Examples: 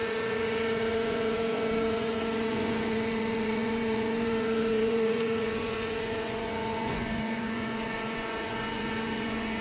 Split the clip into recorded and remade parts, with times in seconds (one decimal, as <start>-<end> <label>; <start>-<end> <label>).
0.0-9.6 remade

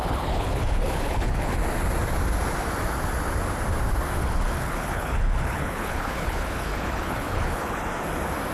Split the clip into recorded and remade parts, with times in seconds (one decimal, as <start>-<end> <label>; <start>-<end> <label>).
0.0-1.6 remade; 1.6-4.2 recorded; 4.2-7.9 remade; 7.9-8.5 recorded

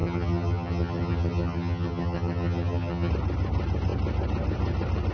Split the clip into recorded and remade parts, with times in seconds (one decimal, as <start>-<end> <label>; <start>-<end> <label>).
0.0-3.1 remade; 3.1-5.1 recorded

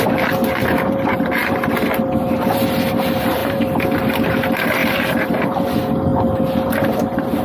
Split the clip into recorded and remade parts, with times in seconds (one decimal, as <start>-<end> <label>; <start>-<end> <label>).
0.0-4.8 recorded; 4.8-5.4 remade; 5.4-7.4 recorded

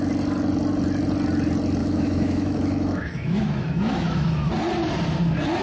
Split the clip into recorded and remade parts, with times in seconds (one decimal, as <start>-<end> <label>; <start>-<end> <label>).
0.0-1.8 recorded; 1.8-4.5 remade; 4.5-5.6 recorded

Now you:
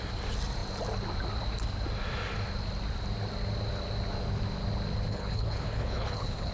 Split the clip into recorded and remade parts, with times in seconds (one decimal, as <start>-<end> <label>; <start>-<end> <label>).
0.0-5.1 recorded; 5.1-6.5 remade